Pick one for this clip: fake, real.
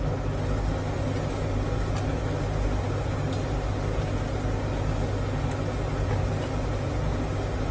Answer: real